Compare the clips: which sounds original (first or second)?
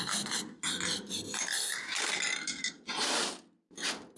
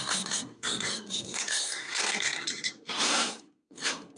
first